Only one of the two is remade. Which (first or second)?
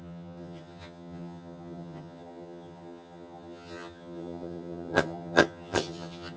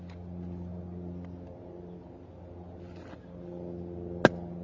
first